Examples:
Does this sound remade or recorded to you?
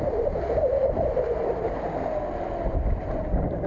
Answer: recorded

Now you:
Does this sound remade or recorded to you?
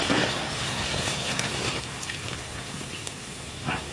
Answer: remade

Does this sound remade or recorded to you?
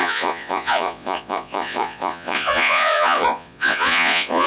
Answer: remade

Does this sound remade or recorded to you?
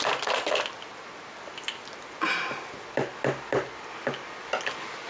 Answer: recorded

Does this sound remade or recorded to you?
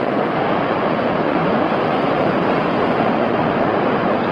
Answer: remade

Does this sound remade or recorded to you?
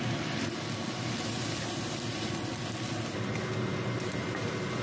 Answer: recorded